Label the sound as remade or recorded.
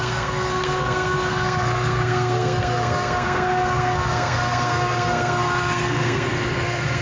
remade